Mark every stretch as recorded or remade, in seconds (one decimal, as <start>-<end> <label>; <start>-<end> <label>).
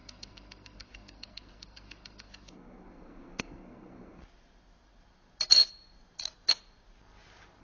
0.0-4.2 remade; 4.2-7.6 recorded